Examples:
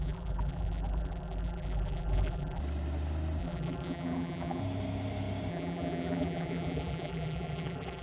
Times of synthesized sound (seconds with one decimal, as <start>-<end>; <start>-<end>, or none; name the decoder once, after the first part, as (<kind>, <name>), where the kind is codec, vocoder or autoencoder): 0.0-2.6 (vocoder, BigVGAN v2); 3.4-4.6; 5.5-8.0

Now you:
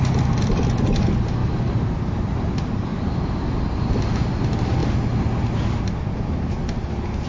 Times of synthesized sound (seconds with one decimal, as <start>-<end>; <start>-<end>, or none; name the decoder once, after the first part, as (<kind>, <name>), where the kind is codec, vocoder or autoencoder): 1.4-2.5 (vocoder, BigVGAN v2); 2.9-3.6

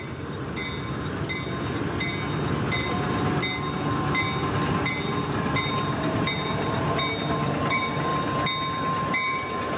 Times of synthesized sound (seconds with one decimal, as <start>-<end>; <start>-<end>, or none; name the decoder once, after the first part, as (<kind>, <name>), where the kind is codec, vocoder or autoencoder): 0.0-0.6 (vocoder, BigVGAN v2); 5.3-8.1; 9.1-9.8

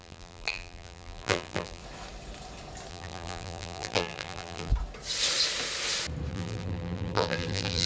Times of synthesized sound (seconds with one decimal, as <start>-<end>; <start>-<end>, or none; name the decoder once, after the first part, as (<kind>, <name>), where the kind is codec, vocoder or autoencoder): 0.0-1.8 (vocoder, BigVGAN v2); 2.9-4.7; 6.3-7.9